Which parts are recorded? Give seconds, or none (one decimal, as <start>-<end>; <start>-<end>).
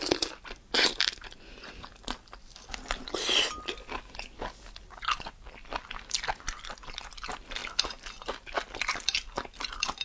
0.0-10.0